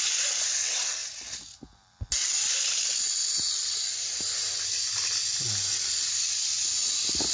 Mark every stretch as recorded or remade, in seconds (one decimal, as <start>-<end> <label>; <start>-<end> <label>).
0.0-7.3 recorded